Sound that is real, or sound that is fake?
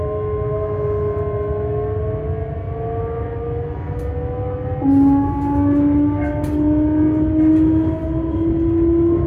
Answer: real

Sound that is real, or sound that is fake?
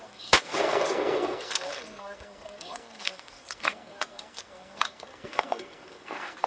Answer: fake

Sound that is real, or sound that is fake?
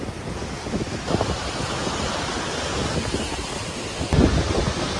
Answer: real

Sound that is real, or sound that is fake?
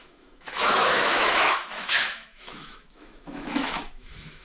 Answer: fake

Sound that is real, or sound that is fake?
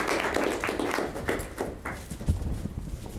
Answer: real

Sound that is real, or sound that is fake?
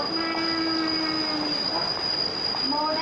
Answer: real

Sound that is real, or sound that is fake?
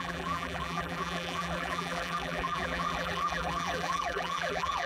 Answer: fake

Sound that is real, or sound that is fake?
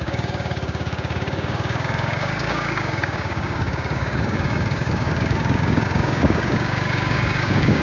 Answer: fake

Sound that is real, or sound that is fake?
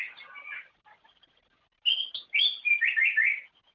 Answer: real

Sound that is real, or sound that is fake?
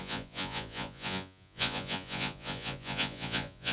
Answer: fake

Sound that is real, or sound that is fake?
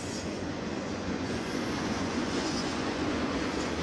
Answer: fake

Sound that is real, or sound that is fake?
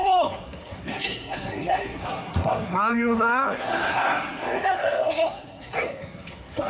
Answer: fake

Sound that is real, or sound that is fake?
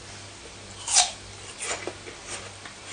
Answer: real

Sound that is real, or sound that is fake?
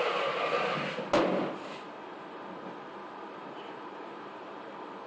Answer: real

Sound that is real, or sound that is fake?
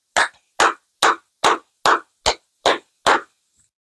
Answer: real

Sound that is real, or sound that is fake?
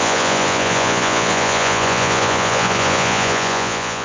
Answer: fake